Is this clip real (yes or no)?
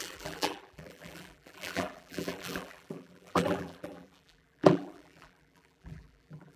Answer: no